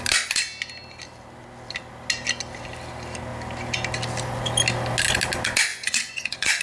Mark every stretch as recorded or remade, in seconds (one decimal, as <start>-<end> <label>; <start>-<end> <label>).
0.0-5.7 recorded; 5.7-6.6 remade